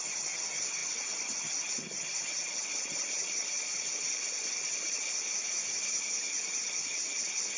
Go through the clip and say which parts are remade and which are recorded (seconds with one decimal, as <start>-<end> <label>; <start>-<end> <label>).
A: 0.0-5.1 remade; 5.1-5.8 recorded; 5.8-7.6 remade

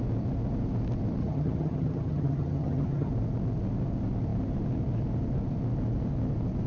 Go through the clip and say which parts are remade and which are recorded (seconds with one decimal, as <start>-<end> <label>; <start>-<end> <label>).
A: 0.0-1.2 recorded; 1.2-3.1 remade; 3.1-6.7 recorded

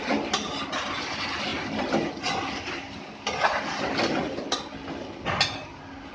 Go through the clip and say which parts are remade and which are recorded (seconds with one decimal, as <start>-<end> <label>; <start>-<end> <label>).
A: 0.0-6.1 recorded